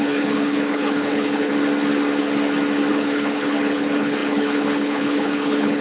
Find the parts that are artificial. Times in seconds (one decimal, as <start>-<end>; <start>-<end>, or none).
0.0-1.5; 2.9-5.8